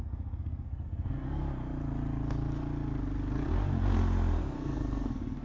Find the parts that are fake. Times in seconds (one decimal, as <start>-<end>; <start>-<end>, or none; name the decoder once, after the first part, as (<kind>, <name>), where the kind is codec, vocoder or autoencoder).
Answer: 0.0-1.4 (codec, SNAC); 4.4-5.4

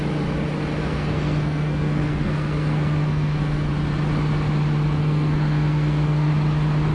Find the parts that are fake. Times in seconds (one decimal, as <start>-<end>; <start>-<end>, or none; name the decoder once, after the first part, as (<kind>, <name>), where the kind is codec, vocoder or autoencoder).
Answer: 0.8-3.7 (codec, SNAC); 5.0-6.3

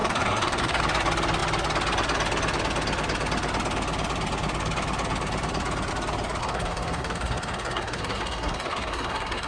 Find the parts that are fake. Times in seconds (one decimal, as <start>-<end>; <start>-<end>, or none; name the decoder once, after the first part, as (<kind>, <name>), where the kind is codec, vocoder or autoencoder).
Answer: 0.0-0.8 (codec, SNAC); 6.4-9.5

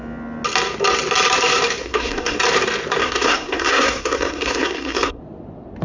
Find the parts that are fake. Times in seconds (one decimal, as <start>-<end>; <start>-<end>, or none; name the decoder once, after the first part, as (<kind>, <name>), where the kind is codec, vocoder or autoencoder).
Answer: 1.8-2.4 (codec, SNAC); 3.0-5.2